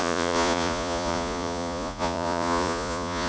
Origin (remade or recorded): remade